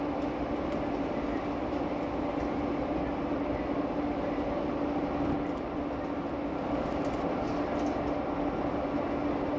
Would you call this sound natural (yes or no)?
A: yes